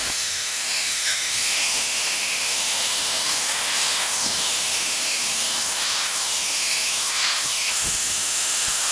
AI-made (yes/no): yes